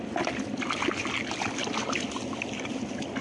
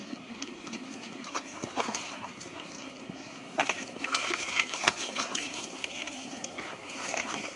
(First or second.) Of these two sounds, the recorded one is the first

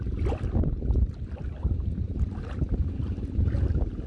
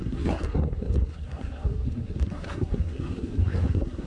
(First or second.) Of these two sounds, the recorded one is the first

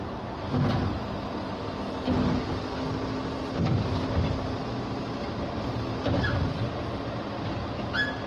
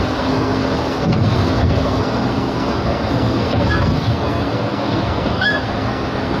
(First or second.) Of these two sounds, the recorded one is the first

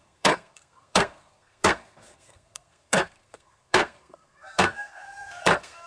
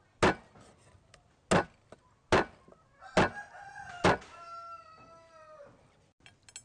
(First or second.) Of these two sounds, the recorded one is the second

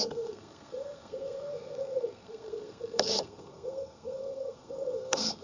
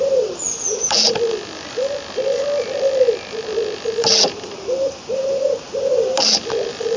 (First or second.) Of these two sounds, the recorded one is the second